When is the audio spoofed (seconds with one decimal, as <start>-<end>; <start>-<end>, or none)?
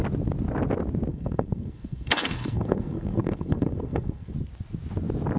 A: 1.1-4.3